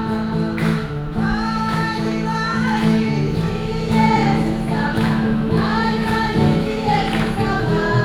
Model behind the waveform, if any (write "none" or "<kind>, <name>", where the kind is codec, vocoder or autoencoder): autoencoder, DAC-VAE